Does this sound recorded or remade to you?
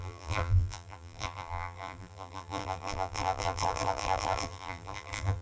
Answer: remade